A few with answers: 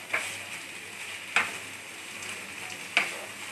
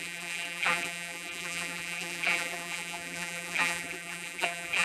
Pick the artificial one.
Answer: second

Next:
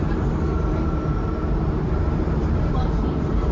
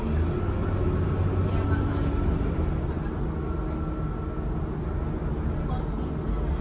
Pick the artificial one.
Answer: first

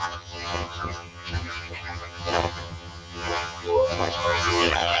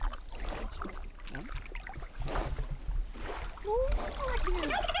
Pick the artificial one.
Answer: first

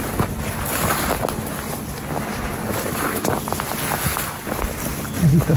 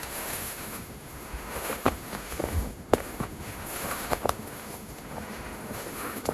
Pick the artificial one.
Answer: second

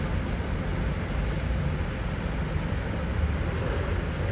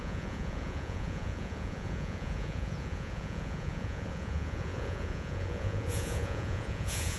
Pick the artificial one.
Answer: second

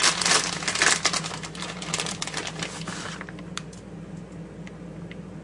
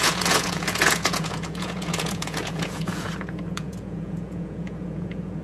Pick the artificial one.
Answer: second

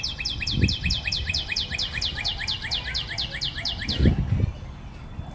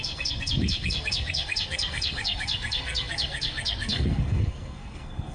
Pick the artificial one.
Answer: second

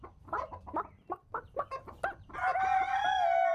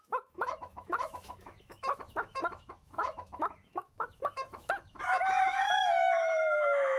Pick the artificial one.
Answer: second